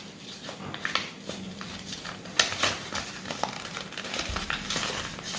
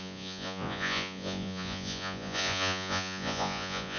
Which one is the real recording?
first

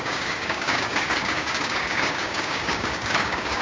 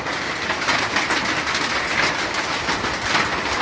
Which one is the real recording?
second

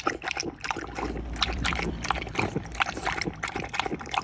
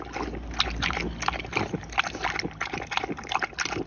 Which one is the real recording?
second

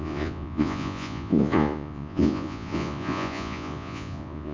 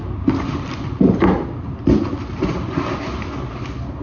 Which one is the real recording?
second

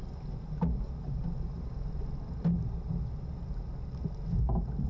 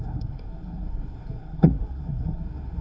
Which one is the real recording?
first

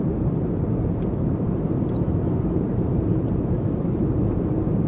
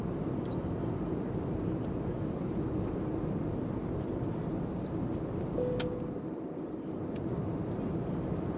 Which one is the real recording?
second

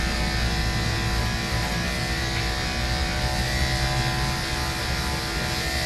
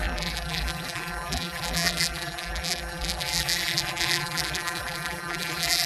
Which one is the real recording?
first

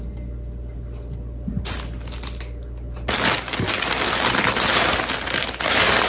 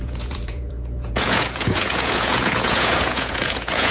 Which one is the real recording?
first